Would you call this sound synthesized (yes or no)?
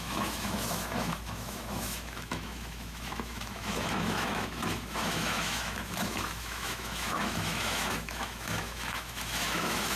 yes